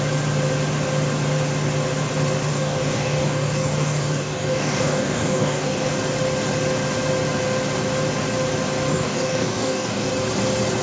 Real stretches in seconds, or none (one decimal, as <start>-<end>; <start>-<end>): 0.0-2.5; 5.9-8.9; 10.1-10.8